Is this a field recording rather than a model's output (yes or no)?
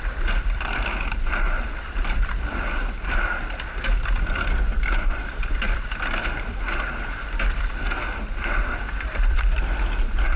no